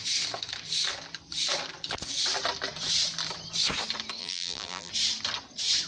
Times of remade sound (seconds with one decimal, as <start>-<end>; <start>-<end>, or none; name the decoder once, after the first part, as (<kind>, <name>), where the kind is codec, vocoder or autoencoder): 4.2-4.9 (vocoder, BigVGAN v2)